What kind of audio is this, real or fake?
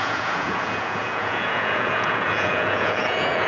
fake